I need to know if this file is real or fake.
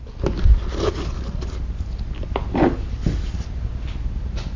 real